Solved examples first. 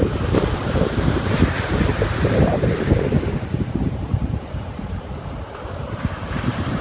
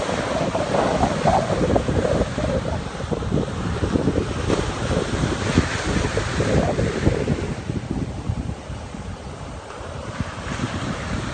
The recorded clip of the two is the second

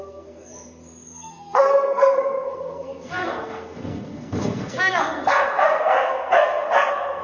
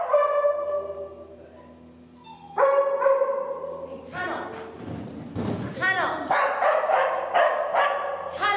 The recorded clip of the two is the second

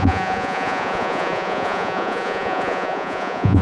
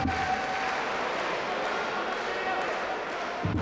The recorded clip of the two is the second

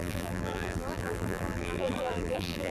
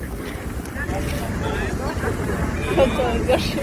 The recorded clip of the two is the second